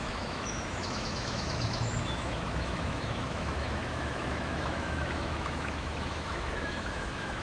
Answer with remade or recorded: remade